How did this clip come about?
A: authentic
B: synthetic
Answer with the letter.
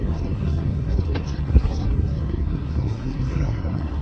B